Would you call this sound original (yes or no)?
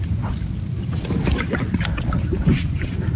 yes